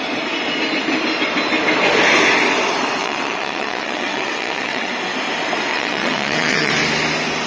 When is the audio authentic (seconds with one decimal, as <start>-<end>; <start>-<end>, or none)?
0.0-3.0; 4.9-5.7; 6.7-7.5